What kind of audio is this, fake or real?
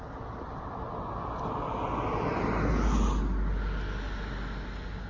real